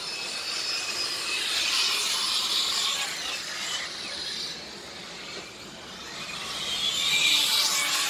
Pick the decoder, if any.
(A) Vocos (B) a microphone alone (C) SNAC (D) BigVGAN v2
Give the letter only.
B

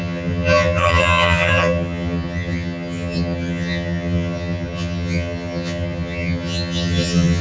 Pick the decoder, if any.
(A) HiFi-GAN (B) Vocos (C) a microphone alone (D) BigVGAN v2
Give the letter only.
A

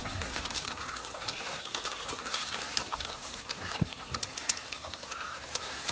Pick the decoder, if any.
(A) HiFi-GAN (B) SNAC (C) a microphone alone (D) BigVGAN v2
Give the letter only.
B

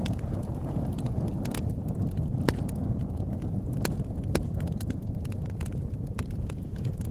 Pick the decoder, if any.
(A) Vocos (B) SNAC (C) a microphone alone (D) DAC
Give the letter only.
A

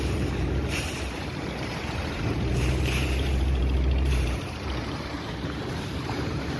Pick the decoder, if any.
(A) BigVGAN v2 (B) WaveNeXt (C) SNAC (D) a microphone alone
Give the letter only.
A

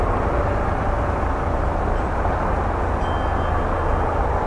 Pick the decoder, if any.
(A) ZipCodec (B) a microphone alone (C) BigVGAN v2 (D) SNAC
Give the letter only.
B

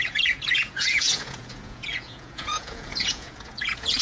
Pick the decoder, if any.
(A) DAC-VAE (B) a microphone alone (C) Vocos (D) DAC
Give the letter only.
C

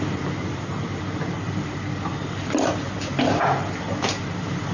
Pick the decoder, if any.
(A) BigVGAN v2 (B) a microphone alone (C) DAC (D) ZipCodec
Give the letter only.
B